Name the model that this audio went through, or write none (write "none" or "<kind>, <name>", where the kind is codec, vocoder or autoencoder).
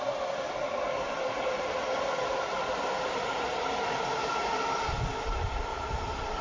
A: none